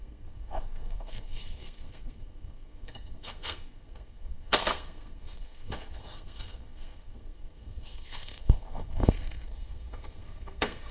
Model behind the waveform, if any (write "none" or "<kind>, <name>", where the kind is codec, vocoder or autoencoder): codec, SNAC